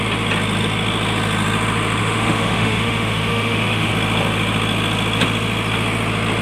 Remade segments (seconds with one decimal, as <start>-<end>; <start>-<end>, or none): 2.0-3.9